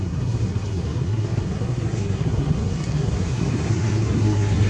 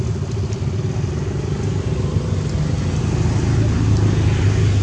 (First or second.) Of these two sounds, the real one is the second